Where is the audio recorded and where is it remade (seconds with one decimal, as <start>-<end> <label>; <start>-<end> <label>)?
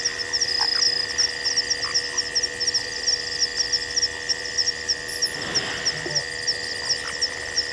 0.0-0.7 remade; 0.7-4.3 recorded; 4.3-5.2 remade; 5.2-7.3 recorded; 7.3-7.7 remade